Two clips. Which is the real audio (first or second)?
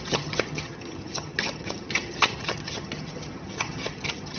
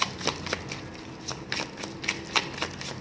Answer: second